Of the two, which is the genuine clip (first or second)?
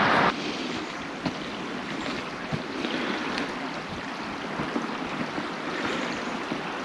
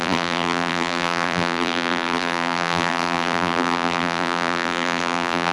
first